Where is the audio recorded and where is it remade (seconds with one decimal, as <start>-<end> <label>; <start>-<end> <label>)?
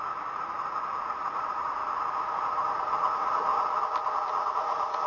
0.0-1.8 remade; 1.8-2.3 recorded; 2.3-3.5 remade; 3.5-4.4 recorded; 4.4-5.1 remade